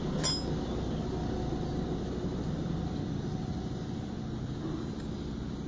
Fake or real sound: real